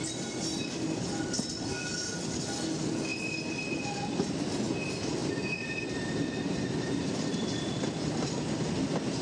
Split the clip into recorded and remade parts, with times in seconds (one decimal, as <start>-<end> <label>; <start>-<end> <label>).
0.0-5.2 recorded; 5.2-8.2 remade; 8.2-9.2 recorded